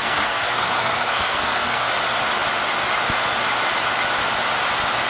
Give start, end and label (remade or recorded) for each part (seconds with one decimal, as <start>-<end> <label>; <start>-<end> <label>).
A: 0.0-1.9 remade; 1.9-5.1 recorded

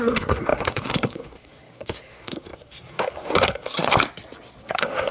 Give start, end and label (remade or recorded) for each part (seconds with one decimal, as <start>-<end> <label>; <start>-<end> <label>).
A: 0.0-3.9 remade; 3.9-4.6 recorded; 4.6-5.1 remade

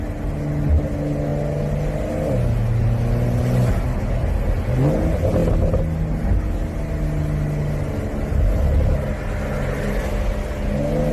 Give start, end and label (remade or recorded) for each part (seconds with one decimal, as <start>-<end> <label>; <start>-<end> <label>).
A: 0.0-11.1 recorded